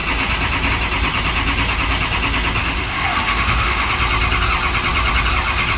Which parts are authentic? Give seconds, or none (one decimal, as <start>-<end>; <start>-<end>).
0.0-2.6; 3.9-5.8